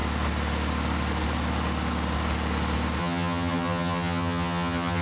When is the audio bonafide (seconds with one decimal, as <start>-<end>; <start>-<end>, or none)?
0.0-3.0